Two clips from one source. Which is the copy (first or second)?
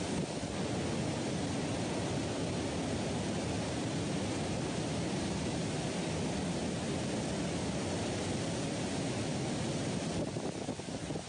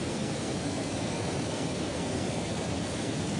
second